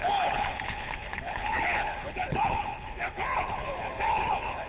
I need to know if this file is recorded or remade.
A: remade